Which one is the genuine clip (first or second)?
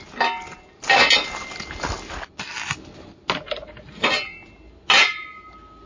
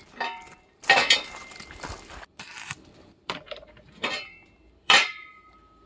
first